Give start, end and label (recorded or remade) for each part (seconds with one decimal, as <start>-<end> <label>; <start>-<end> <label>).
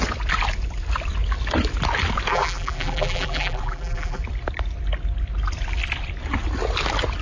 0.0-2.3 recorded; 2.3-4.2 remade; 4.2-7.2 recorded